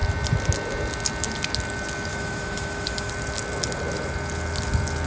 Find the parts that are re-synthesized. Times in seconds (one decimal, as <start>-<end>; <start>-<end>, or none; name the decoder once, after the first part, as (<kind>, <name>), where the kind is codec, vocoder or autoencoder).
2.1-3.1 (autoencoder, DAC-VAE)